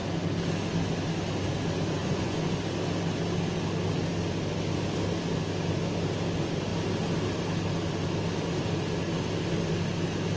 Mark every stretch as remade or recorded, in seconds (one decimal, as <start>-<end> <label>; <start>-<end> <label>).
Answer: 0.0-2.0 recorded; 2.0-2.6 remade; 2.6-10.4 recorded